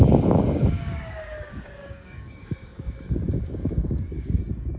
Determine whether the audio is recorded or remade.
remade